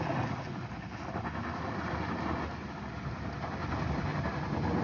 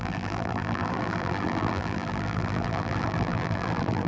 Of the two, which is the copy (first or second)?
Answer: second